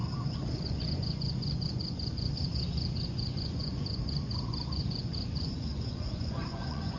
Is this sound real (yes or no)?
no